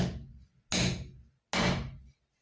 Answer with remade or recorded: recorded